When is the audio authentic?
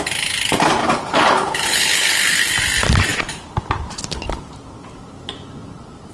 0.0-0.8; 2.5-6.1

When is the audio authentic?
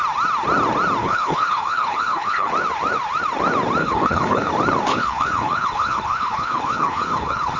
0.0-1.0; 2.5-3.8; 4.5-4.9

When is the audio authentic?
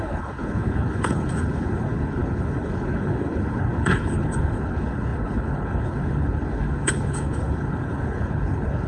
none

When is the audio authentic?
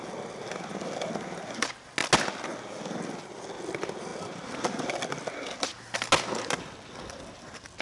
0.0-7.8